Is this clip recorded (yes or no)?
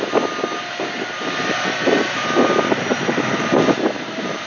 yes